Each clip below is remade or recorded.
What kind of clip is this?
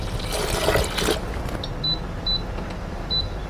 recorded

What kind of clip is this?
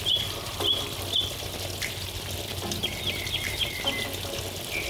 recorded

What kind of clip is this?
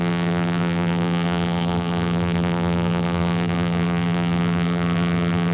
remade